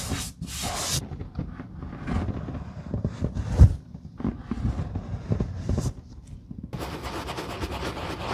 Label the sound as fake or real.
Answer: real